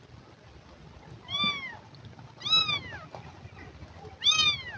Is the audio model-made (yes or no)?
no